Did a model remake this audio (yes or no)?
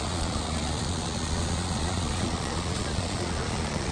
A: yes